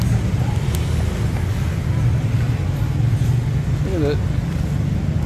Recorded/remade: recorded